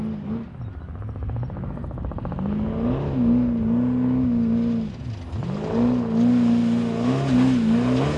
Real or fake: real